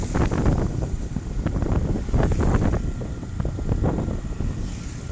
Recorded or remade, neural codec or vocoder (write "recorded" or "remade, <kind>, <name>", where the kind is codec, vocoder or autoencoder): recorded